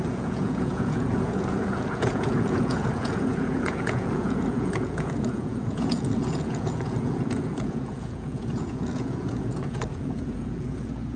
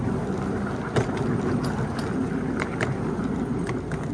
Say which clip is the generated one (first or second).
first